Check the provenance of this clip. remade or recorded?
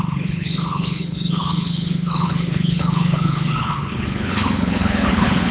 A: remade